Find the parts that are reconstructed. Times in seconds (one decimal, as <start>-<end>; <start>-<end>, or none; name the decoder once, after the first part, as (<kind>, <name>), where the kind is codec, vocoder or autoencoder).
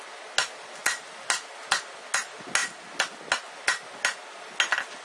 none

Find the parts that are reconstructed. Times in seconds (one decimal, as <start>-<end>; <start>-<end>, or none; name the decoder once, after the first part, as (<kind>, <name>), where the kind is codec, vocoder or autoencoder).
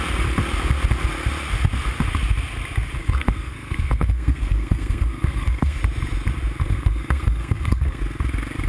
3.0-5.8 (codec, SNAC); 6.6-8.0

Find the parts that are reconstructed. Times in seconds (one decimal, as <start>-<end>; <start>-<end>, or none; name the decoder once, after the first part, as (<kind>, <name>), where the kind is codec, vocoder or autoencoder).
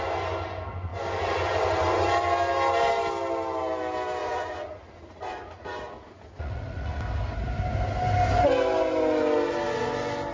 4.2-7.0 (vocoder, Vocos)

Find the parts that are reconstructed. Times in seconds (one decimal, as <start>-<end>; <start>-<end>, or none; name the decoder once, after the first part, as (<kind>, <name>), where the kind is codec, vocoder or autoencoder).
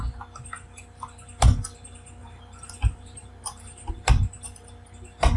2.2-3.9 (vocoder, BigVGAN v2)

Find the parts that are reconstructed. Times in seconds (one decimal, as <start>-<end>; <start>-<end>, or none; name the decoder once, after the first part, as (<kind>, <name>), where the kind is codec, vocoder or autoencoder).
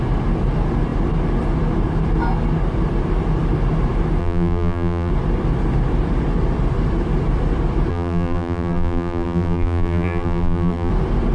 4.2-5.1 (vocoder, BigVGAN v2); 7.9-10.9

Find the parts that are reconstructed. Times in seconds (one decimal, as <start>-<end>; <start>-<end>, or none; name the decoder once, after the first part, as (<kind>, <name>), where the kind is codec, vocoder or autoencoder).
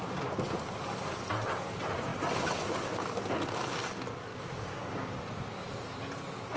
4.3-5.1 (codec, DAC)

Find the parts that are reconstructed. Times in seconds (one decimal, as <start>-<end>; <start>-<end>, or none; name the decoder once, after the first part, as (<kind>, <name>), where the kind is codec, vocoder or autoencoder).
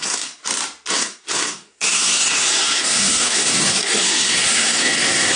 0.0-0.4 (codec, SNAC); 0.9-5.4